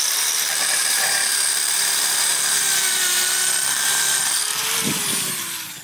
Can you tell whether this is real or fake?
fake